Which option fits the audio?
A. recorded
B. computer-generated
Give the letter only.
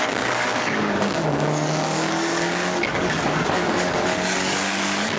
B